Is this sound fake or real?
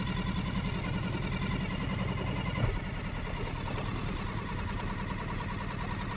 real